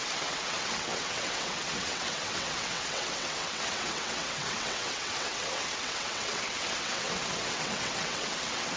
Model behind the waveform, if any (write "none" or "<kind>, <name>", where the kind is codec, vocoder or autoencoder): vocoder, WaveNeXt